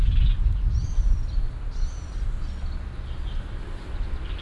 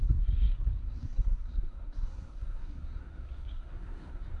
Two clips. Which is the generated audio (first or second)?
second